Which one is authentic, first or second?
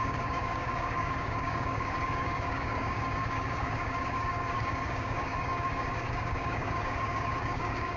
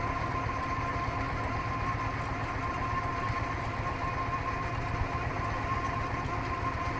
second